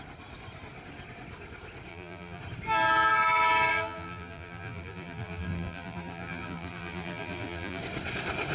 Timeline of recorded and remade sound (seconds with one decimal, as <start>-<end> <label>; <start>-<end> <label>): 0.0-1.9 recorded; 1.9-2.4 remade; 2.4-3.7 recorded; 3.7-7.8 remade; 7.8-8.5 recorded